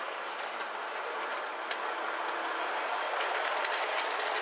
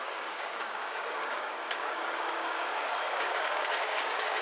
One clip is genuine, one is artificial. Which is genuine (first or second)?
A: first